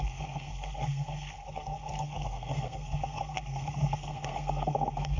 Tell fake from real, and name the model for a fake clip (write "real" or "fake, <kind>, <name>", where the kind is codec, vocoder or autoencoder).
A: fake, codec, SNAC